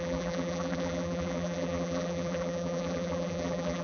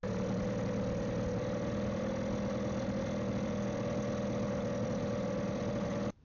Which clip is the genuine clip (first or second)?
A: second